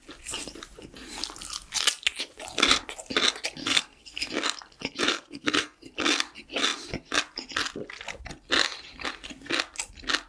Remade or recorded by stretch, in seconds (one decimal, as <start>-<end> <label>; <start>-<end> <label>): 0.0-3.6 recorded; 3.6-4.3 remade; 4.3-5.1 recorded; 5.1-5.9 remade; 5.9-10.3 recorded